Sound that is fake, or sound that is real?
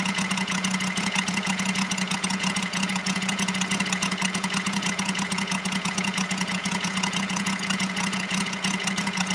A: fake